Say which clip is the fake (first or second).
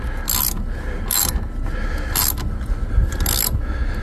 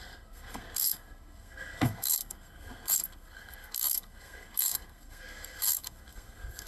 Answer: second